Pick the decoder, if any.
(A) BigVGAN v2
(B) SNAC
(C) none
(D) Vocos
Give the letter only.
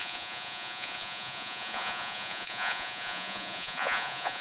D